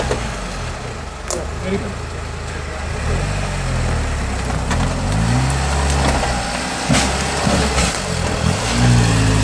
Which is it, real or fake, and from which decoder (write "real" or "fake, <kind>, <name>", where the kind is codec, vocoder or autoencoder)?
real